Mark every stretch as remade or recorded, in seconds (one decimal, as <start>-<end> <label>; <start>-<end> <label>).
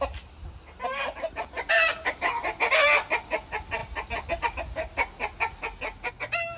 0.0-0.9 recorded; 0.9-2.3 remade; 2.3-6.6 recorded